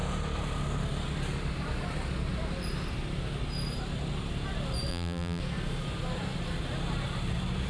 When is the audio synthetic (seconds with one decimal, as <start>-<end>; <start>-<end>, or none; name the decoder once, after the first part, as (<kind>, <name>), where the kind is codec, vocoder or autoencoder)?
4.9-5.4 (vocoder, BigVGAN v2)